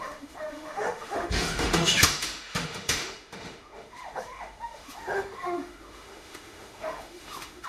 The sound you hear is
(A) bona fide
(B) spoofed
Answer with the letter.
B